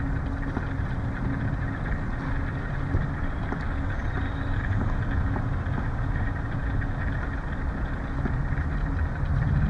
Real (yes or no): yes